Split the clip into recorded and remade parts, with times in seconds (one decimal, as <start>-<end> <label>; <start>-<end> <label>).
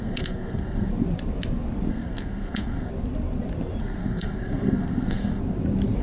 0.0-0.9 remade; 0.9-1.9 recorded; 1.9-2.9 remade; 2.9-3.8 recorded; 3.8-5.4 remade; 5.4-6.0 recorded